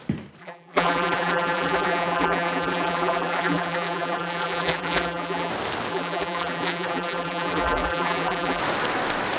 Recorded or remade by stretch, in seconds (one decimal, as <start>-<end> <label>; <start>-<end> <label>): 0.0-0.4 recorded; 0.4-5.5 remade; 5.5-5.9 recorded; 5.9-8.6 remade; 8.6-9.4 recorded